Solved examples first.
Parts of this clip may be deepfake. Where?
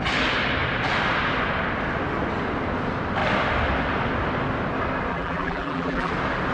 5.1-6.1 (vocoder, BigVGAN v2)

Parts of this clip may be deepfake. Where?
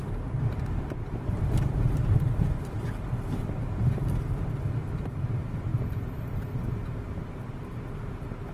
0.0-4.2 (vocoder, BigVGAN v2); 5.7-6.6